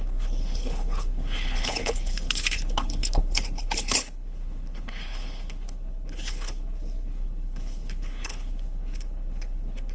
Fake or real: fake